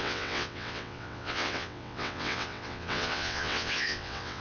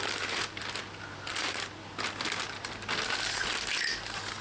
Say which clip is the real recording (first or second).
second